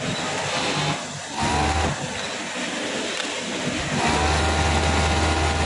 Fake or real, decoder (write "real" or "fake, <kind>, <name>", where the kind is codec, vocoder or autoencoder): real